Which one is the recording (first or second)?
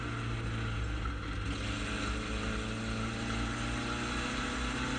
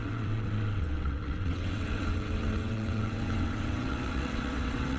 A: first